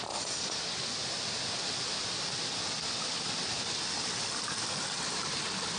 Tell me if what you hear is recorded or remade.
recorded